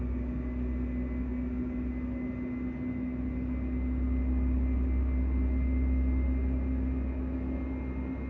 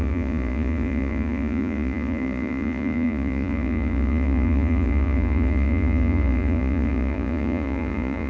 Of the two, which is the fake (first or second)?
second